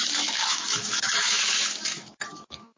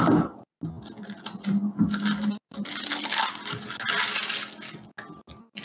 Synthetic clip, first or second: first